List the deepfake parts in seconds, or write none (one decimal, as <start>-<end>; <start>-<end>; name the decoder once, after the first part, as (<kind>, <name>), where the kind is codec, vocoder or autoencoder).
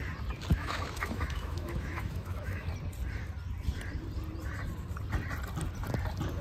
0.5-2.7 (autoencoder, DAC-VAE)